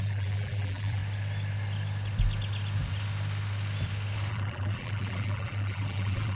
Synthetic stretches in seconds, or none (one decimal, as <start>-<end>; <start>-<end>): 0.0-1.0; 4.3-6.4